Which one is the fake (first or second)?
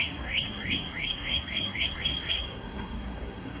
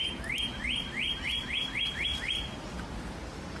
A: first